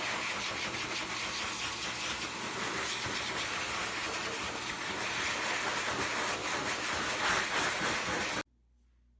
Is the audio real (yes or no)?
yes